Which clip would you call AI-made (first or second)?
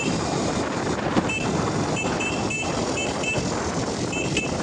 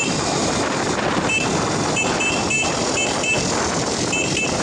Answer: first